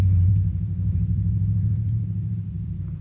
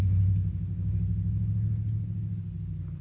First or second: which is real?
second